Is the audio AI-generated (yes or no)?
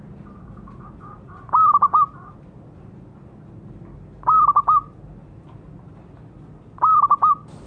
no